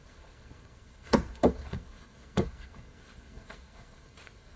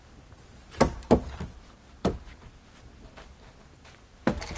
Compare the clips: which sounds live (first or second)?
second